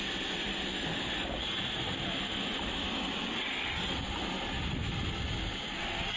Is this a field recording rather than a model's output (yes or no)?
yes